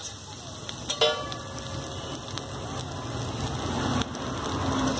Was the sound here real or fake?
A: real